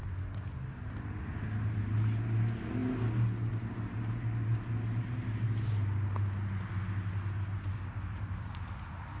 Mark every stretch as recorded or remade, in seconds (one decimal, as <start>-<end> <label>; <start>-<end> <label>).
0.0-9.2 recorded